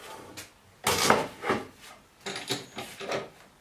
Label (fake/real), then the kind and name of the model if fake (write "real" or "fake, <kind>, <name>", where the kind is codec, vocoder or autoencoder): real